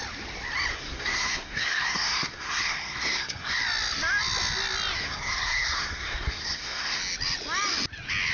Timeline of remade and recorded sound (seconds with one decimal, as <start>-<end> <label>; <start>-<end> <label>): 0.0-0.7 recorded; 0.7-3.6 remade; 3.6-5.0 recorded; 5.0-7.0 remade; 7.0-8.3 recorded